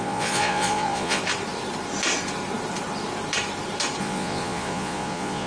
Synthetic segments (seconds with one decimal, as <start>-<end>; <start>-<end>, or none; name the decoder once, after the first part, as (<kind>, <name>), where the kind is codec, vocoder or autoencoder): 0.0-1.2 (vocoder, Vocos); 4.0-5.5